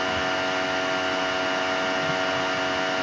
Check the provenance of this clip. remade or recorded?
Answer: recorded